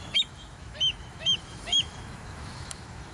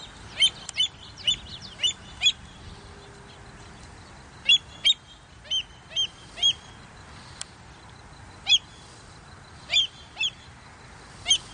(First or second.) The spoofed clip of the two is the first